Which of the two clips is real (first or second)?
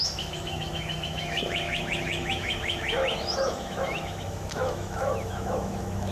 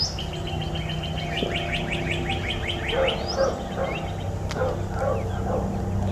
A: second